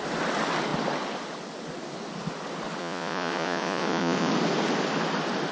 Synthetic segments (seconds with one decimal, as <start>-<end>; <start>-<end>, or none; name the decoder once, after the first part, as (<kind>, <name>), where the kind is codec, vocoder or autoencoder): 2.8-4.3 (vocoder, Vocos)